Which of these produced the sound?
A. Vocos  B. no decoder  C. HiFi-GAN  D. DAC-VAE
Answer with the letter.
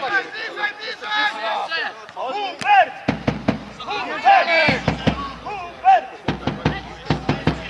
B